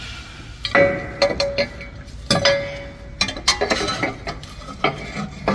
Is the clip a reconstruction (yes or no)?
no